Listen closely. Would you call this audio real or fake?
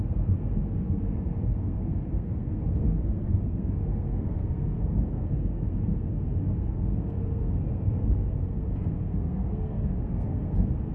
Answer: fake